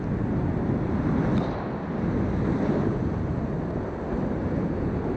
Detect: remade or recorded recorded